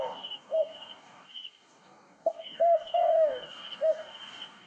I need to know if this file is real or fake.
fake